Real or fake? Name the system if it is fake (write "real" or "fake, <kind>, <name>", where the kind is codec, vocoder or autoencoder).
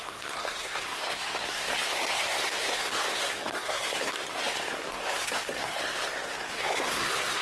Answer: fake, codec, SNAC